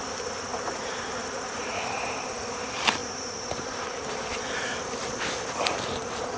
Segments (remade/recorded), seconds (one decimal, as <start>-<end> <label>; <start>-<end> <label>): 0.0-0.5 recorded; 0.5-1.8 remade; 1.8-3.0 recorded; 3.0-6.4 remade